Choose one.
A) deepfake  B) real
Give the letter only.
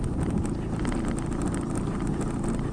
B